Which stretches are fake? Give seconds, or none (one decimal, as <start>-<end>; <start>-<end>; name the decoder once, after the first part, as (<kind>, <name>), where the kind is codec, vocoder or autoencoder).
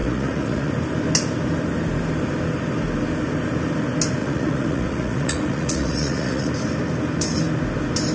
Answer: 0.0-0.7 (vocoder, Vocos); 4.2-6.5